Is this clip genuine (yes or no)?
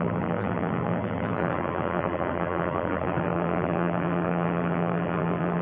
no